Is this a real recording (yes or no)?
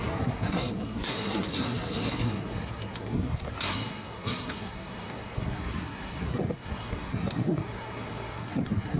no